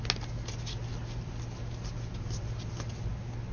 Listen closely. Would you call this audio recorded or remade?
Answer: recorded